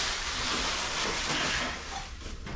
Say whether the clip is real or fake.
real